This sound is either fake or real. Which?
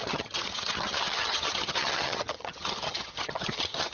fake